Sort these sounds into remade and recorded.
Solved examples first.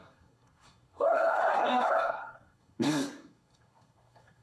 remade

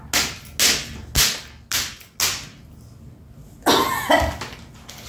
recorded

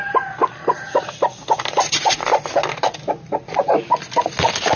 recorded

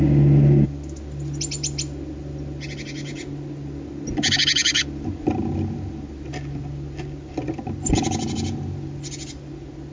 recorded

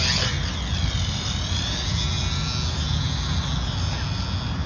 recorded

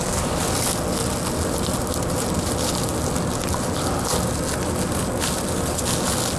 recorded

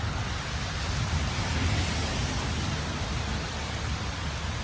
recorded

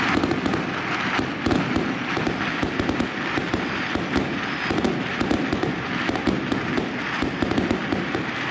recorded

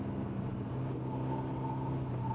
recorded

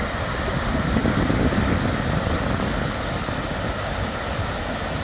recorded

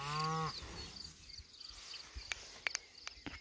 recorded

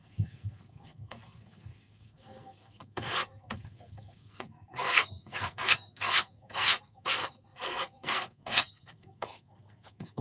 remade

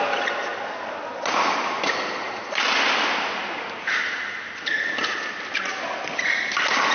recorded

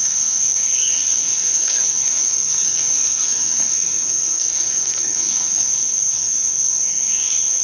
remade